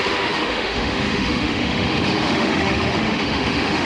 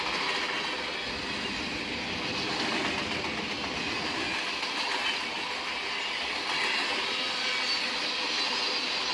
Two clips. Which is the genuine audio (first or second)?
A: second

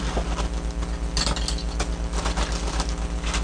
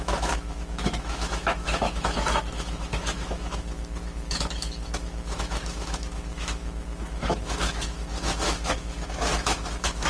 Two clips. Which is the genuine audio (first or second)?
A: first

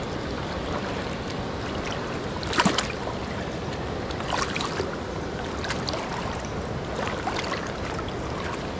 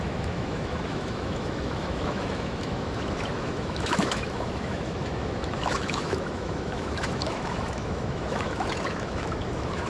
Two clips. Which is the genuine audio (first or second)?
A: first